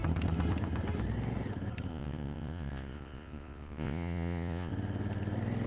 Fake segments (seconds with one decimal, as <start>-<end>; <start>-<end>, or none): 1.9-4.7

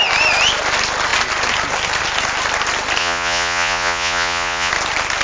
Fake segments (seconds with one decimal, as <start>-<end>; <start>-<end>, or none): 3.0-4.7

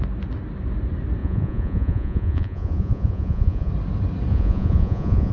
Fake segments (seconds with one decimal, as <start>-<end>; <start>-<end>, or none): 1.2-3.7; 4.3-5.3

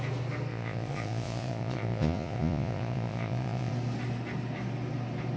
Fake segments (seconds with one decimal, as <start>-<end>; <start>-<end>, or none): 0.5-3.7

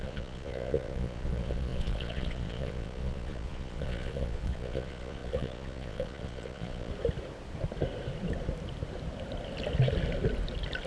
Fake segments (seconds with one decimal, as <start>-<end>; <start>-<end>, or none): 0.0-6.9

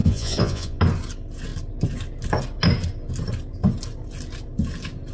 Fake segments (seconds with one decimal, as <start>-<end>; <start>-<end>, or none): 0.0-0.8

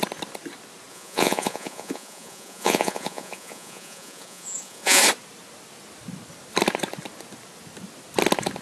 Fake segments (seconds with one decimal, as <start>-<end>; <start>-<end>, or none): 0.9-5.0